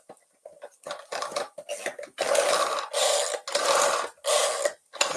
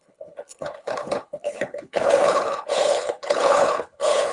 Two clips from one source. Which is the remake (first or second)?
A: second